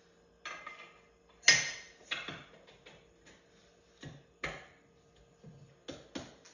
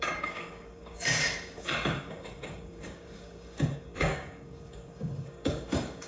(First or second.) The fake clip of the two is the second